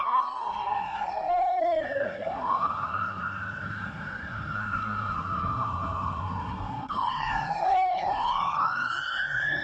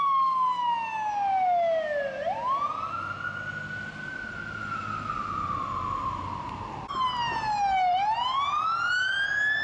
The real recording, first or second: second